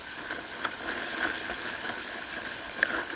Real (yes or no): no